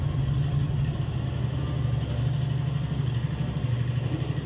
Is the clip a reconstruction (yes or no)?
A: no